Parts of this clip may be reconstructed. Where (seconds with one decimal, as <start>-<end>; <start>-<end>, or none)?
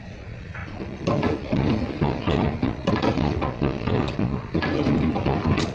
0.0-5.7